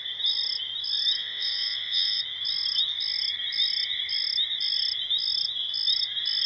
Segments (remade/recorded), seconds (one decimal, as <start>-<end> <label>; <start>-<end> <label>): 0.0-1.2 recorded; 1.2-2.2 remade; 2.2-6.5 recorded